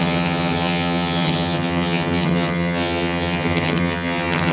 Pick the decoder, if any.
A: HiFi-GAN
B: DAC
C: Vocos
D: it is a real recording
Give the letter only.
A